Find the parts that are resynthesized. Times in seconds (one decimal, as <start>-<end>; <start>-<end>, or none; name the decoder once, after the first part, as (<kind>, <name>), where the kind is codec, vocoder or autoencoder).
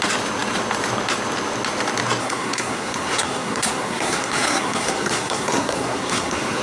2.2-6.6 (codec, SNAC)